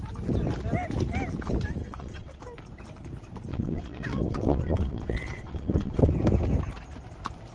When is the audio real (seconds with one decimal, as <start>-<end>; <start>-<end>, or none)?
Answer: 0.0-1.8; 2.4-3.5; 6.1-7.5

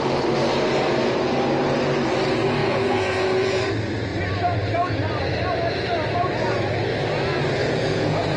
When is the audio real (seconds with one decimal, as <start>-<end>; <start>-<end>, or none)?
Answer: 0.0-2.6; 3.6-7.6

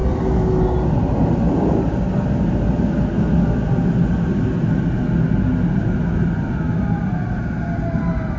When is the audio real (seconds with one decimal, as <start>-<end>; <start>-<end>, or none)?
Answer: 0.0-8.4

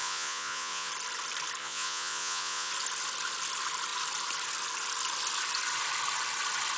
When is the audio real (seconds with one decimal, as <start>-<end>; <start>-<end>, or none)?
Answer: 0.9-1.6; 2.7-6.8

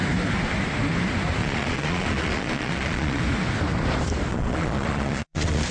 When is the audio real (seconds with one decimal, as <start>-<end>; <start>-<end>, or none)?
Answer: 0.0-1.4; 3.2-4.3

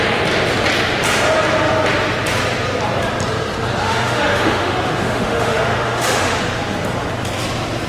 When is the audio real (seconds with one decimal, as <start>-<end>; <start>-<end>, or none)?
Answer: 0.0-3.8; 6.4-7.9

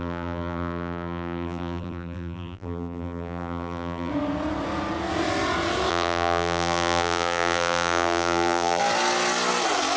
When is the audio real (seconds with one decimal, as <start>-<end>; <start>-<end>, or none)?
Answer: 4.1-5.9; 8.8-10.0

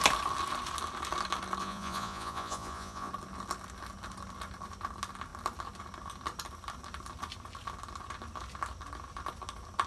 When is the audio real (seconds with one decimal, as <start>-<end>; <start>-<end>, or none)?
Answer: 0.0-1.6; 3.1-9.9